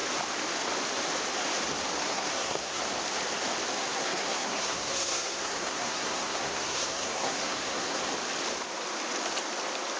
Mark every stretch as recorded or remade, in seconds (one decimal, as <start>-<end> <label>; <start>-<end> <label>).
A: 0.0-2.0 recorded; 2.0-2.8 remade; 2.8-3.8 recorded; 3.8-8.0 remade; 8.0-10.0 recorded